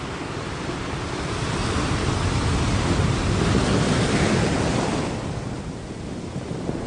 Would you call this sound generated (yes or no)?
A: no